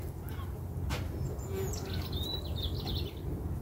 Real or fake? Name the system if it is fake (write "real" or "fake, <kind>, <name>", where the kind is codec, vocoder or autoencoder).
real